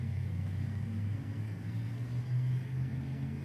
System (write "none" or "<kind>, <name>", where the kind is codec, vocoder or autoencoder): codec, SNAC